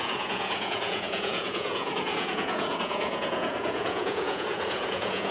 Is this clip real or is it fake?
fake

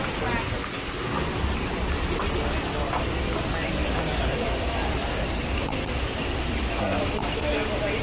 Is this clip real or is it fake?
real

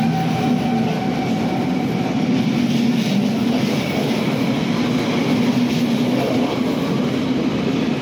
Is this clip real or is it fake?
real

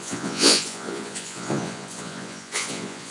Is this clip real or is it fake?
fake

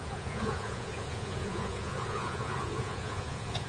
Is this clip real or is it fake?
fake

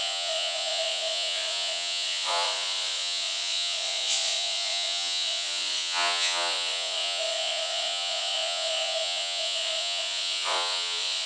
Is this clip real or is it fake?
fake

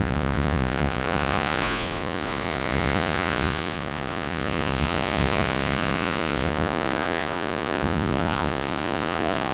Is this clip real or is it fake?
fake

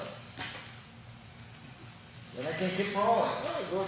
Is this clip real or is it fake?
real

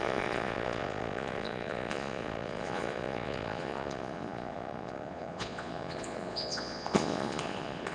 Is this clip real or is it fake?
fake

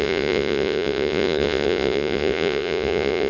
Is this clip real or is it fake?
fake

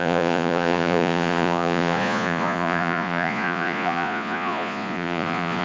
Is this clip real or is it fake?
fake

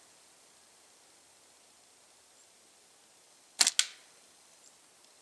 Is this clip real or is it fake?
real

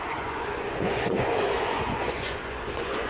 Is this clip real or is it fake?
fake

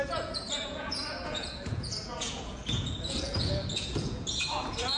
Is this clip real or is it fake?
fake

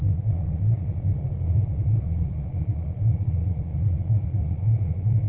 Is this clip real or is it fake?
fake